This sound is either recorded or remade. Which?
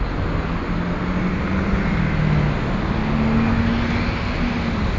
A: recorded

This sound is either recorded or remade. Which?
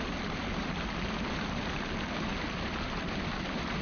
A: recorded